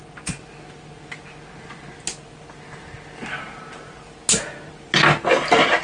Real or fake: real